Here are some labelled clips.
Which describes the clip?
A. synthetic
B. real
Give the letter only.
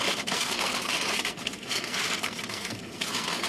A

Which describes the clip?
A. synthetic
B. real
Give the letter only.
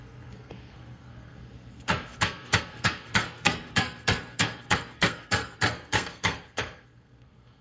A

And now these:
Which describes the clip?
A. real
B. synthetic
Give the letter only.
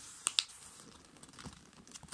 A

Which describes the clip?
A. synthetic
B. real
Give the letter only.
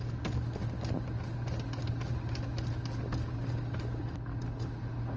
B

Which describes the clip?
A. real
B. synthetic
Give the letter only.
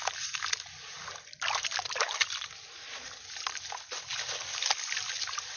A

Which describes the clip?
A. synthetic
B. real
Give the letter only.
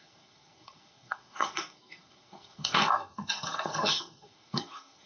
A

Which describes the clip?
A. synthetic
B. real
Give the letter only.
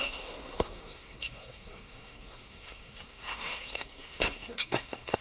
A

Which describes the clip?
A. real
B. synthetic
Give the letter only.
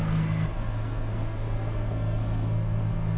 B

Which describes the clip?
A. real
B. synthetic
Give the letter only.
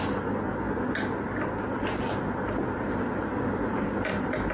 A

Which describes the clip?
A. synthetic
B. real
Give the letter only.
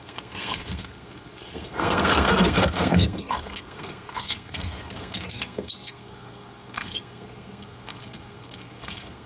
A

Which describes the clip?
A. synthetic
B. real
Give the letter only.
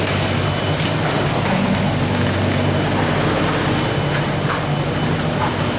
B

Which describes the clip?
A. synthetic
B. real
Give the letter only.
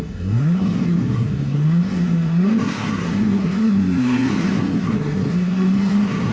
A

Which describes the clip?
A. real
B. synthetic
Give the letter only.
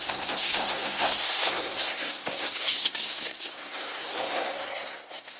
B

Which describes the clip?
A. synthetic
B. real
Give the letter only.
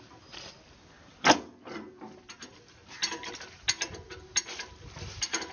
B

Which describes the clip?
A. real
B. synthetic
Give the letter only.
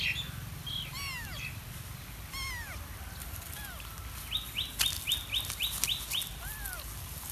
A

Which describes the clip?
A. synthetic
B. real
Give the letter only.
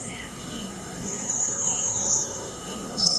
A